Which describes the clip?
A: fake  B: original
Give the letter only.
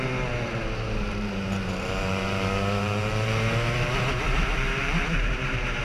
A